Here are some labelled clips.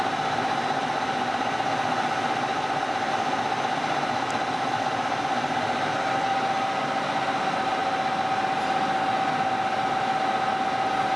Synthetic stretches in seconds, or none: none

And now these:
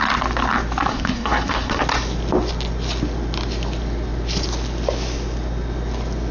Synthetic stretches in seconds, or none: 0.9-1.8 (codec, SNAC)

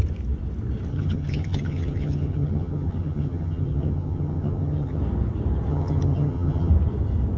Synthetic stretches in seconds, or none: 0.9-5.0 (vocoder, HiFi-GAN); 5.7-6.7